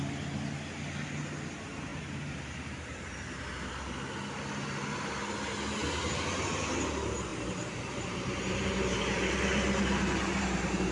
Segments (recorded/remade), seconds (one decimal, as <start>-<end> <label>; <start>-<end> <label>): 0.0-1.9 recorded; 1.9-3.4 remade; 3.4-7.3 recorded; 7.3-10.9 remade